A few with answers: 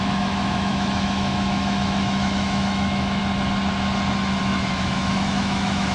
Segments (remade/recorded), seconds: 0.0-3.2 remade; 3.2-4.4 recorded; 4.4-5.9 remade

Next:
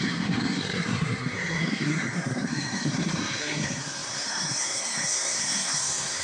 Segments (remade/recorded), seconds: 0.0-6.2 remade

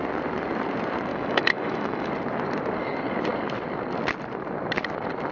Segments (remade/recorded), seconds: 0.0-1.1 recorded; 1.1-2.1 remade; 2.1-5.3 recorded

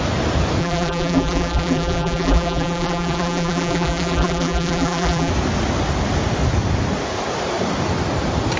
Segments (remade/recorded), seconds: 0.0-0.6 recorded; 0.6-5.3 remade; 5.3-8.6 recorded

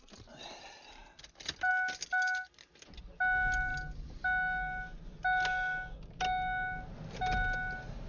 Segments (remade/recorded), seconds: 0.0-8.1 recorded

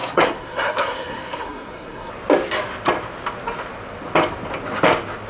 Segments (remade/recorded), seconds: 0.0-2.1 remade; 2.1-5.3 recorded

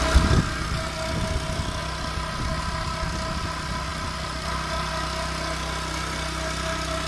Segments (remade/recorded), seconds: 0.0-7.1 recorded